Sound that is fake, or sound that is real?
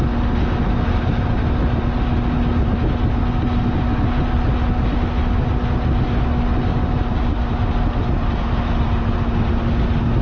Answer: real